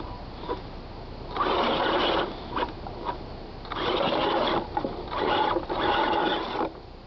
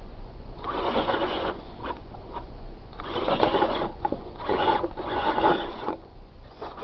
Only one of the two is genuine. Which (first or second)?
first